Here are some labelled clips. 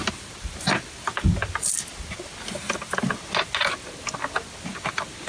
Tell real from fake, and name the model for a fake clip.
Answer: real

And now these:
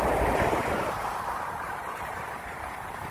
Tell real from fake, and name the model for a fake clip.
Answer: fake, vocoder, BigVGAN v2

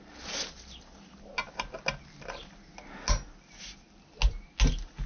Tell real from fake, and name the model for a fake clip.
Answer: real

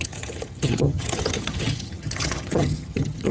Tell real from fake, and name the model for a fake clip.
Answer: fake, vocoder, HiFi-GAN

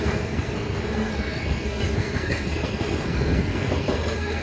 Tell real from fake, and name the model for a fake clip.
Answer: fake, codec, SNAC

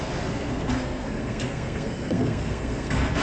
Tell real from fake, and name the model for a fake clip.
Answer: fake, codec, SNAC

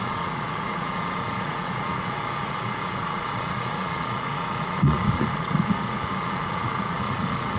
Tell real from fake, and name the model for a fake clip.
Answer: fake, vocoder, Vocos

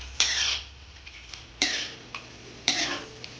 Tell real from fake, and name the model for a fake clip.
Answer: fake, vocoder, BigVGAN v2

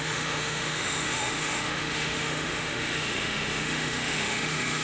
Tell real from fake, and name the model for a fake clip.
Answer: fake, autoencoder, DAC-VAE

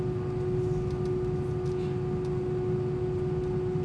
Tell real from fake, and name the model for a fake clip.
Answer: real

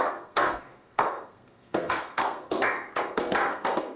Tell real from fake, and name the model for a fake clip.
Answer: fake, codec, SNAC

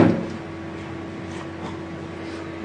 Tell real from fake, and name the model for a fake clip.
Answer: real